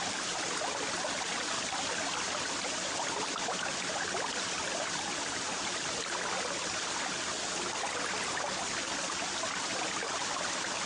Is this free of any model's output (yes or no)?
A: yes